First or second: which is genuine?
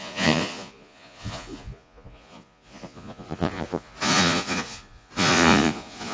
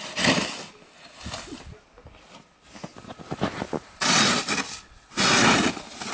second